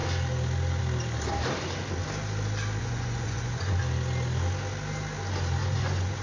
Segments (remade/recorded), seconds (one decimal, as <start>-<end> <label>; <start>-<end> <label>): 0.0-2.8 recorded; 2.8-3.8 remade; 3.8-5.6 recorded; 5.6-6.2 remade